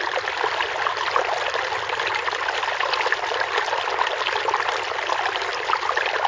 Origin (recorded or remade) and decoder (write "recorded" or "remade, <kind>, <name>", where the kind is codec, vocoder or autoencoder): recorded